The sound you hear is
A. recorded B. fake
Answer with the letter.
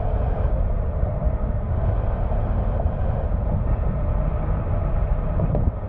A